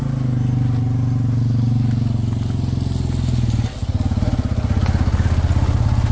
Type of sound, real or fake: real